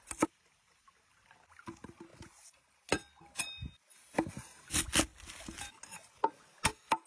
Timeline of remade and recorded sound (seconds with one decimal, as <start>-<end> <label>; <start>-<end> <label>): 0.0-7.1 recorded